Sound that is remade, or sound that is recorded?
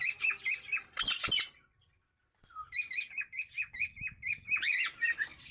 recorded